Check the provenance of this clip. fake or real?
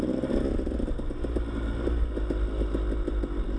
real